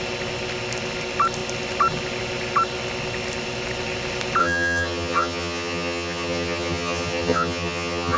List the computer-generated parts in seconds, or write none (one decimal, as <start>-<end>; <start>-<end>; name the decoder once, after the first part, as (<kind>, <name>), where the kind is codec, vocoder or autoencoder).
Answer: 4.4-8.2 (vocoder, HiFi-GAN)